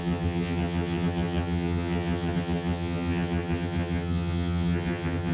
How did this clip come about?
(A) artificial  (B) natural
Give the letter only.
A